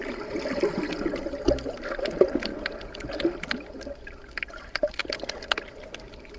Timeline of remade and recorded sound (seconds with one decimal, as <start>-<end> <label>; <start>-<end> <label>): 0.0-6.4 recorded